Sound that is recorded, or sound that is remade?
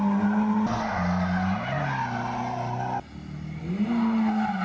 recorded